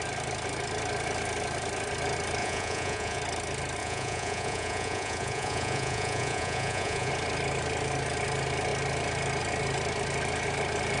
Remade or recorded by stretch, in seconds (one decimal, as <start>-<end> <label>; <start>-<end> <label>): 0.0-2.4 recorded; 2.4-3.2 remade; 3.2-3.8 recorded; 3.8-7.1 remade; 7.1-11.0 recorded